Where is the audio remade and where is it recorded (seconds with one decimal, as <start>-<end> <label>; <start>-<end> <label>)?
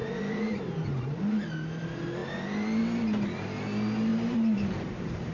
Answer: 0.0-1.2 remade; 1.2-4.1 recorded; 4.1-5.3 remade